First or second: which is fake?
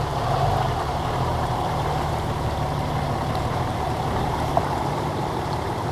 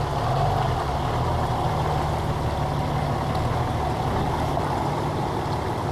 first